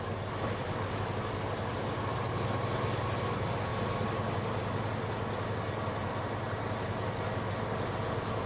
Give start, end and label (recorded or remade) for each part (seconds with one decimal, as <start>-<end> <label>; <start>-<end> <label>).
0.0-8.5 recorded